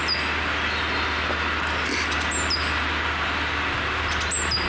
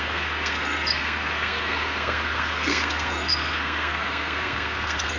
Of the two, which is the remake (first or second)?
second